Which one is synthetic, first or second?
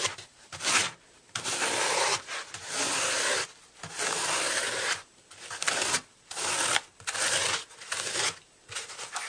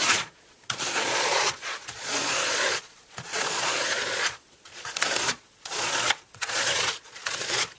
second